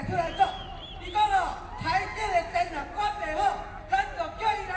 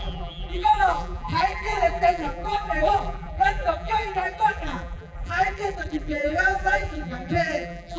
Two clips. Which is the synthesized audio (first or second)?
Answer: second